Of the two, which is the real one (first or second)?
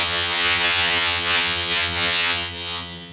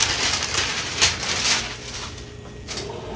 second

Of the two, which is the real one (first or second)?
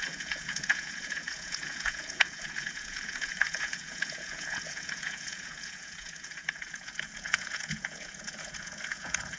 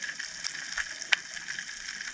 second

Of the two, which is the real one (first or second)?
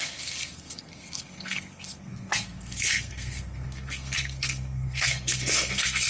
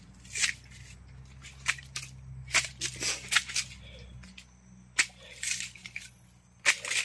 second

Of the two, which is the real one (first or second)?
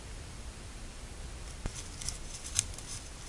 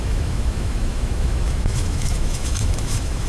first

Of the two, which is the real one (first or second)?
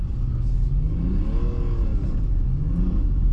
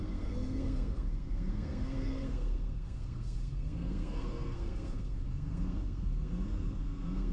first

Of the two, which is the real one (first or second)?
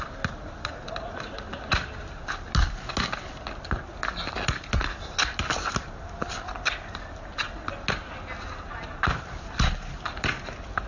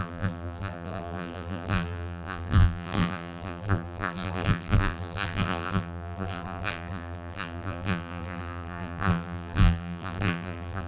first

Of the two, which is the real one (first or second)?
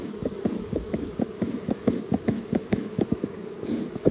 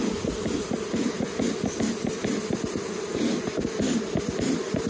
second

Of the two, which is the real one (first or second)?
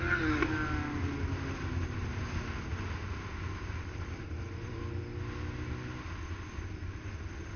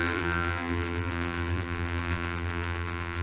first